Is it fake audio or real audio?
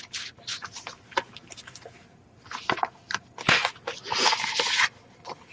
real